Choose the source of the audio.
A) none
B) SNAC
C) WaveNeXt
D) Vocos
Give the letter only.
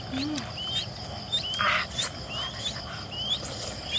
A